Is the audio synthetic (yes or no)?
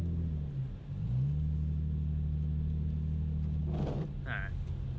no